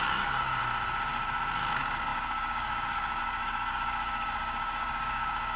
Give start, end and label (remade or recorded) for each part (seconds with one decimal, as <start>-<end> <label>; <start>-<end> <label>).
0.0-0.6 remade; 0.6-1.7 recorded; 1.7-5.6 remade

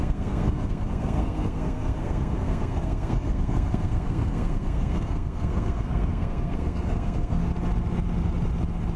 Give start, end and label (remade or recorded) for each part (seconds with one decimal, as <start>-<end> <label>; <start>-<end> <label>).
0.0-7.5 remade; 7.5-9.0 recorded

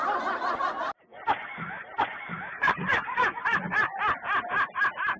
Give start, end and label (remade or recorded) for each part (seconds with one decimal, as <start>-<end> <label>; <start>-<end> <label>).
0.0-1.1 recorded; 1.1-4.0 remade; 4.0-5.2 recorded

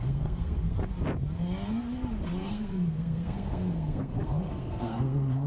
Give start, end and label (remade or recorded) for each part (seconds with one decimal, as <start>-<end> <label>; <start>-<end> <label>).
0.0-0.8 remade; 0.8-2.5 recorded; 2.5-5.5 remade

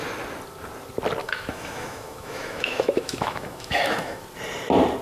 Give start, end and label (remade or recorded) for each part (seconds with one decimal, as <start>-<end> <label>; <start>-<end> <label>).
0.0-1.2 recorded; 1.2-4.2 remade; 4.2-5.0 recorded

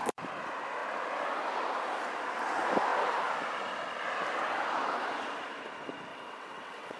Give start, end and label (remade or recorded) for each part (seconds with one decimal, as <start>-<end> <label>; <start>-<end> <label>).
0.0-6.1 recorded; 6.1-7.0 remade

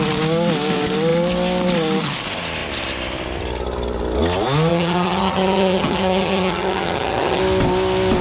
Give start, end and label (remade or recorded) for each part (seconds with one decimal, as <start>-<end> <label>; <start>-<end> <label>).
0.0-4.7 recorded; 4.7-7.4 remade; 7.4-8.2 recorded